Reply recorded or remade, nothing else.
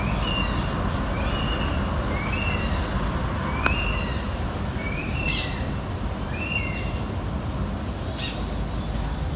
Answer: recorded